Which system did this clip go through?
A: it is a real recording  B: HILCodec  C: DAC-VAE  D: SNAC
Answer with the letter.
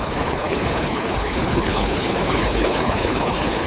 B